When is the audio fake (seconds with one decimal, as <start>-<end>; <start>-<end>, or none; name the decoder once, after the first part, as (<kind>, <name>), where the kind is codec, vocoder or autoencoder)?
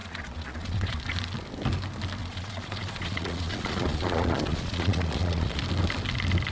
0.0-1.0 (vocoder, Vocos); 2.2-5.6